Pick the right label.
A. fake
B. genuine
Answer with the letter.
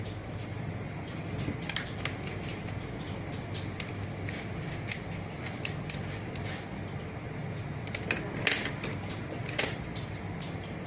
B